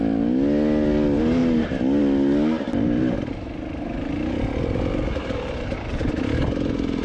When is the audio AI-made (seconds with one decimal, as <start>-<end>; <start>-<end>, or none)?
none

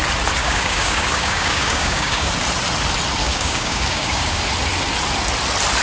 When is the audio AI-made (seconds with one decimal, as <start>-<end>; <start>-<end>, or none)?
0.4-2.3; 3.2-4.4

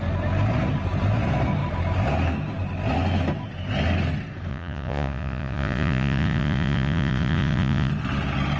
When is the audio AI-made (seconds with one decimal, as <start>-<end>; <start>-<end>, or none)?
4.5-7.9

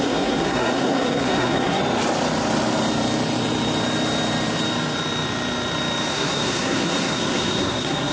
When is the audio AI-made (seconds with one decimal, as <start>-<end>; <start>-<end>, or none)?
0.0-1.8; 6.1-8.1